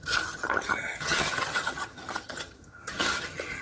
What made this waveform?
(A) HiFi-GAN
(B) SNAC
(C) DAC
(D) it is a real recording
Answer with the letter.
A